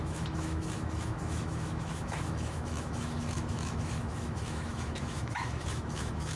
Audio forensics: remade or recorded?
remade